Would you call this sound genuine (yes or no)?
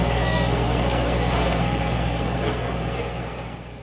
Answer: no